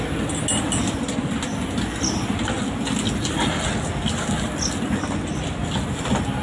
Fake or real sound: real